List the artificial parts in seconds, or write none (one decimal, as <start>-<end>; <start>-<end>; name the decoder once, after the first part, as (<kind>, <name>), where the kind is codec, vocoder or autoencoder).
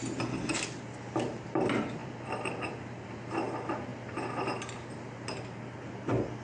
2.0-3.3 (vocoder, BigVGAN v2)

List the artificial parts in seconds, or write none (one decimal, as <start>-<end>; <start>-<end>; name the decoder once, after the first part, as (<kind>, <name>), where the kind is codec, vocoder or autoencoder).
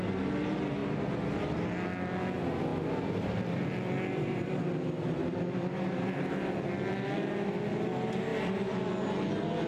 2.7-6.3 (vocoder, BigVGAN v2); 8.3-8.9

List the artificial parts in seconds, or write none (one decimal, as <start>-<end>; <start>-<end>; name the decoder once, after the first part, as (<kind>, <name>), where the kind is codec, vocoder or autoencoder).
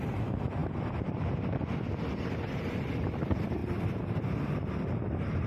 0.0-3.6 (vocoder, BigVGAN v2); 4.5-5.5